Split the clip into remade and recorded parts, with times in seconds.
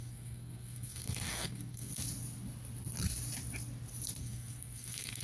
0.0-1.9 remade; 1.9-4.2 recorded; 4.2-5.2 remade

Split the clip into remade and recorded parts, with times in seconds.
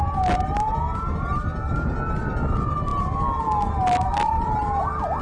0.0-5.2 recorded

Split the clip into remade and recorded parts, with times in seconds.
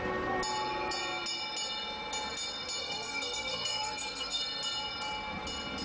0.0-2.8 recorded; 2.8-4.4 remade; 4.4-5.8 recorded